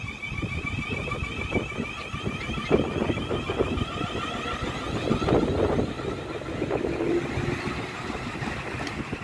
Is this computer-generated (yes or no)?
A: no